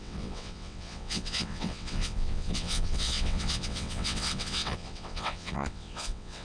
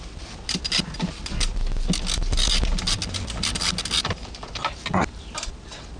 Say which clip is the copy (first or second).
first